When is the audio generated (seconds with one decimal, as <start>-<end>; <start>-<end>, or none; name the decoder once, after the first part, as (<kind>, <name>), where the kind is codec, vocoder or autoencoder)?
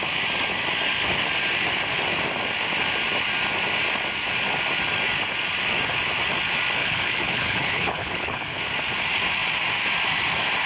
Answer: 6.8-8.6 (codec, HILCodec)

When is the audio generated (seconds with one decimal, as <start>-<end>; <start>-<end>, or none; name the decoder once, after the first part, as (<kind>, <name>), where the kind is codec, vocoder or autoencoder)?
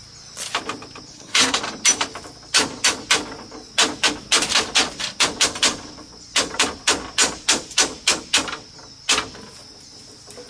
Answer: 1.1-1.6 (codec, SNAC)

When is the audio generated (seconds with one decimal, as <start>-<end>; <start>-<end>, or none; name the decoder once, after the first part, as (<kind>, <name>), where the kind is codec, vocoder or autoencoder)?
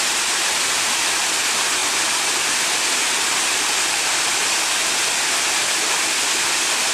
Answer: none